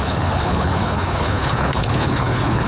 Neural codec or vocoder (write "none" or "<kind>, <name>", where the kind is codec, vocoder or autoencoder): codec, HILCodec